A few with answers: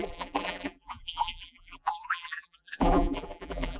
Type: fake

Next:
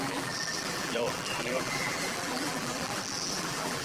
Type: fake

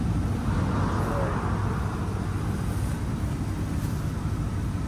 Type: real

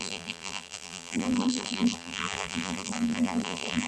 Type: fake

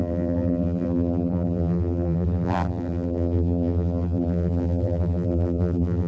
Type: fake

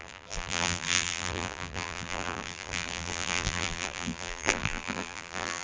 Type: fake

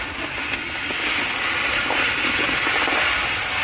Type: real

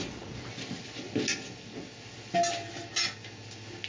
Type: real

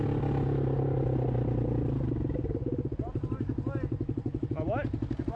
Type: real